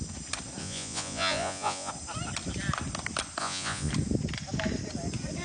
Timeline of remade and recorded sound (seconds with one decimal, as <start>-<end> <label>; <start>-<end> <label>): 0.0-0.6 recorded; 0.6-1.9 remade; 1.9-3.4 recorded; 3.4-3.9 remade; 3.9-5.4 recorded